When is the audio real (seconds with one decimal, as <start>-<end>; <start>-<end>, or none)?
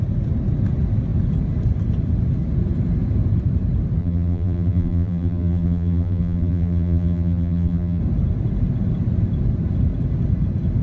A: 0.0-4.0; 8.0-10.8